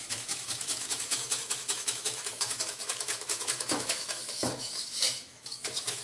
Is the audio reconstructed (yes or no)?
yes